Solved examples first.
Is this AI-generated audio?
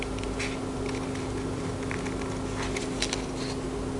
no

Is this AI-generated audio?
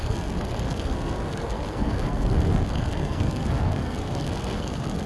yes